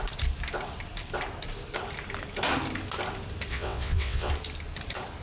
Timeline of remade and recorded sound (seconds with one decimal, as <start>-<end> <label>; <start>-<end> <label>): 0.0-3.5 recorded; 3.5-4.3 remade; 4.3-5.2 recorded